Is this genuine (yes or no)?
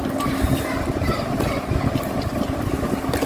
yes